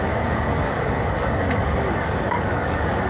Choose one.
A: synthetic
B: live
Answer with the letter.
A